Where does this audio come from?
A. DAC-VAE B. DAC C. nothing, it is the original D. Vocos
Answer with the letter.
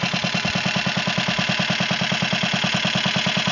C